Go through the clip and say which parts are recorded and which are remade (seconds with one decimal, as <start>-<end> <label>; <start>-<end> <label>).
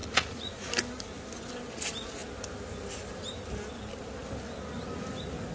0.0-0.7 remade; 0.7-5.5 recorded